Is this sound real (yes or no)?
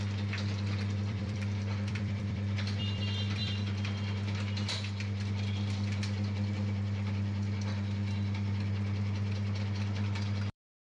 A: no